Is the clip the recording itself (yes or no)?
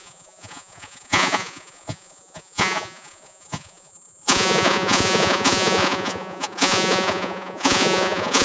no